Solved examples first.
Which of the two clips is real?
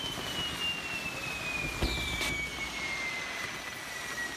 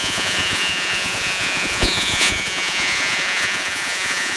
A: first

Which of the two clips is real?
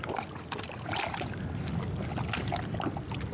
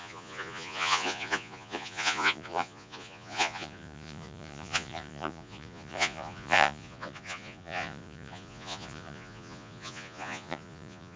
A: first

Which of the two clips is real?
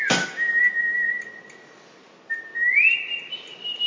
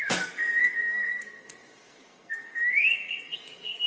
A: first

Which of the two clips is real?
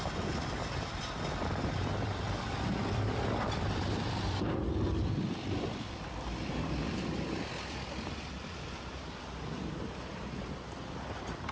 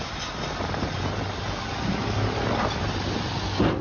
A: second